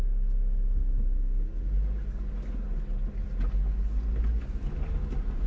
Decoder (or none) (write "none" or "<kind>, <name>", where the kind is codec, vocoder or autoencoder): none